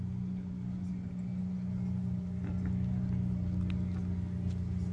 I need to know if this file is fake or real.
real